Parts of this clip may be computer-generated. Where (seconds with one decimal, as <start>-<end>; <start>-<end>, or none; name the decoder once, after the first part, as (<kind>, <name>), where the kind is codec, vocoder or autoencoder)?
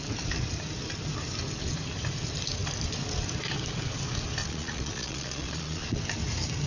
4.4-6.0 (vocoder, Vocos)